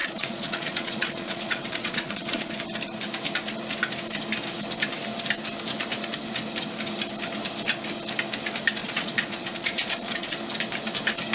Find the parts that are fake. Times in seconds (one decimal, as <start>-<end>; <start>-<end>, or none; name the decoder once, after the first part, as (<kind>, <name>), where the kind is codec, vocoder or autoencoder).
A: 0.0-2.5 (vocoder, Vocos); 8.8-10.3